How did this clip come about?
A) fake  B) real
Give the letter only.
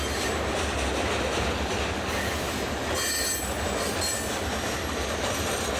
B